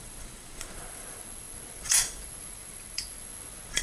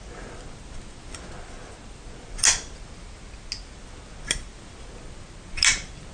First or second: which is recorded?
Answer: second